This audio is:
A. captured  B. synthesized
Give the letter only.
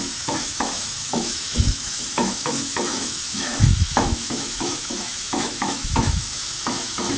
B